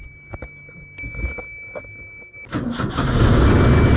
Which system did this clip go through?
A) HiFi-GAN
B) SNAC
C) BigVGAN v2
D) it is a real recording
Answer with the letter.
D